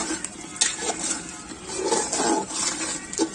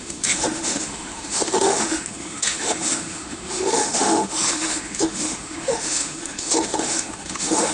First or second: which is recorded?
first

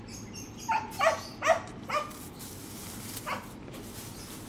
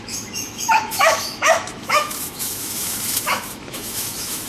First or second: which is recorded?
first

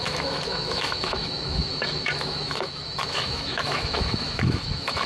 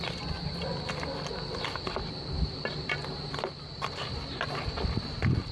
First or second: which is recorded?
second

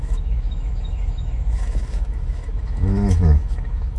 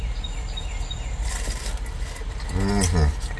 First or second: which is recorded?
second